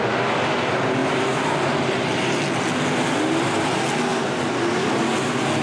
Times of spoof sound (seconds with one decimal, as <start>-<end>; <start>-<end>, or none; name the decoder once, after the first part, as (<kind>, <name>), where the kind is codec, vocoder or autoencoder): 1.0-2.4 (vocoder, BigVGAN v2)